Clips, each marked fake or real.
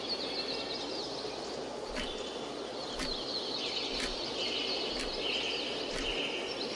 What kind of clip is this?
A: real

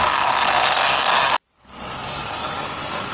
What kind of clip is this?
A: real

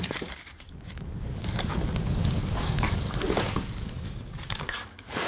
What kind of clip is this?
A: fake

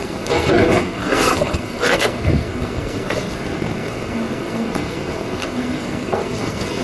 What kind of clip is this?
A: fake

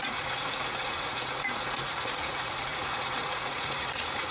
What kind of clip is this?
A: fake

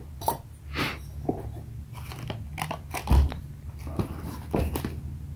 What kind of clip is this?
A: real